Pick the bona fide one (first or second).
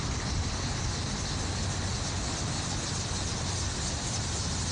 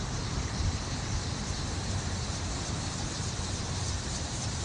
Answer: first